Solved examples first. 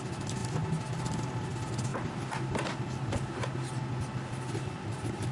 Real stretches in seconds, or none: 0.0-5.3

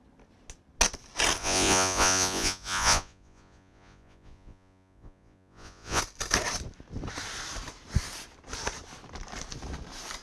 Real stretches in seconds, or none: 0.0-1.4; 6.0-10.2

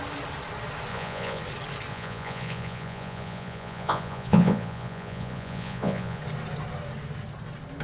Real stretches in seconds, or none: 0.0-0.9; 1.4-1.9; 6.2-7.8

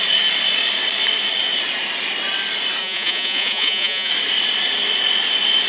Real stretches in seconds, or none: 0.0-2.8; 4.1-5.7

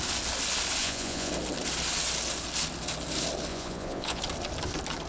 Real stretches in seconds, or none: 0.0-0.8; 1.3-3.5; 4.2-5.1

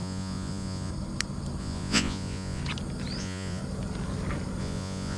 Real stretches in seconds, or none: 0.9-1.6; 2.6-3.2; 3.6-4.6

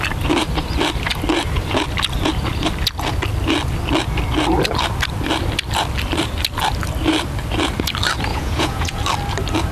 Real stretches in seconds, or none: 0.0-8.3; 9.0-9.7